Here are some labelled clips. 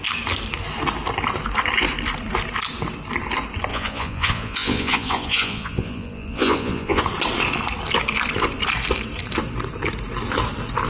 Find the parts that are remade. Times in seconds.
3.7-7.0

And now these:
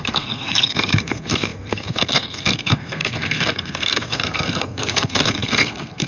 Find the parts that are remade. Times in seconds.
0.0-6.1

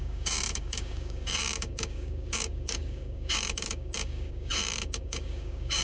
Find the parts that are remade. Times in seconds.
0.0-5.8